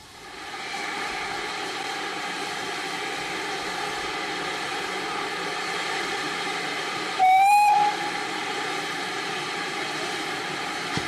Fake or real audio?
fake